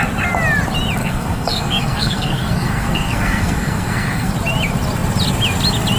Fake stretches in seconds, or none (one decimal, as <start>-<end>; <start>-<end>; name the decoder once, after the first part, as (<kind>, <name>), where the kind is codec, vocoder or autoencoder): 1.0-4.3 (codec, SNAC)